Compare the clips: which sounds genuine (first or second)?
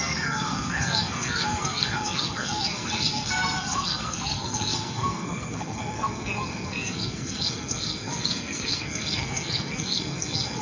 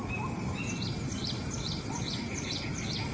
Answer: second